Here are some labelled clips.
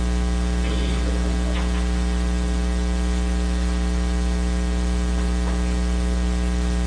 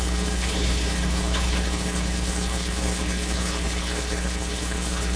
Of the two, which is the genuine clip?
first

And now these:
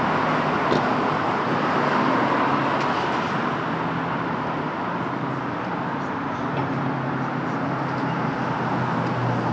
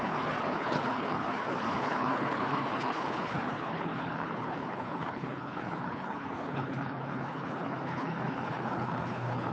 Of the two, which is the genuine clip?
first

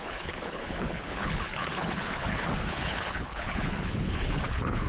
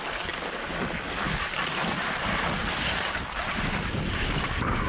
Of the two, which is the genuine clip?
second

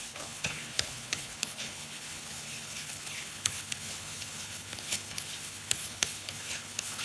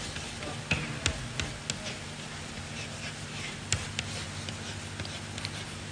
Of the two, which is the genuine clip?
second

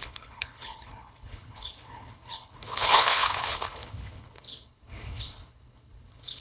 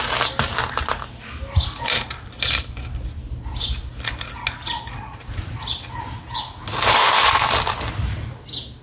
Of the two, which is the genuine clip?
second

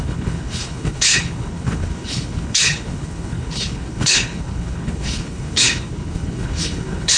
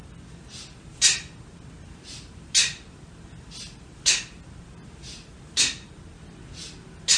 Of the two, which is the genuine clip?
second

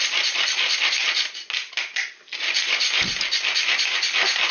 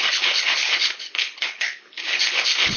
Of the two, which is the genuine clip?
first